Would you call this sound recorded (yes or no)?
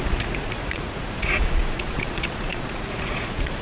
no